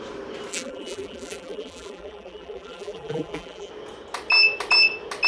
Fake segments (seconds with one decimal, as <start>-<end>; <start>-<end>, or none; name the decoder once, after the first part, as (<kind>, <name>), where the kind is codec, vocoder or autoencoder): 0.5-3.7 (vocoder, BigVGAN v2)